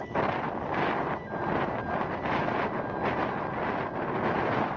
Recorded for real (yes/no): yes